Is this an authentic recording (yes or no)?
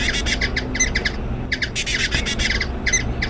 yes